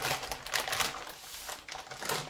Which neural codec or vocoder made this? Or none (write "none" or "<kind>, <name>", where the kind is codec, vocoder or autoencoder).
none